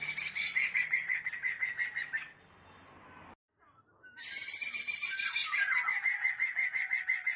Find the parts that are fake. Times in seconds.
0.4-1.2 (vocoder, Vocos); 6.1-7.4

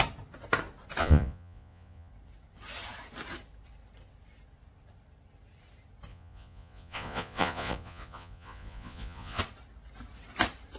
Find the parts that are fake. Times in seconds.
1.0-2.1 (vocoder, Vocos); 6.1-9.4

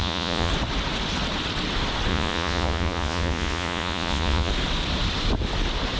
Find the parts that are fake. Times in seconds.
0.0-0.5 (vocoder, Vocos); 2.1-4.5

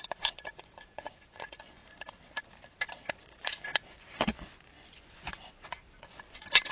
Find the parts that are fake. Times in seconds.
0.0-1.8 (vocoder, Vocos); 3.1-6.7

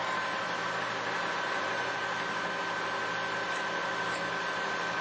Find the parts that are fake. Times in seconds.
1.3-2.0 (vocoder, Vocos)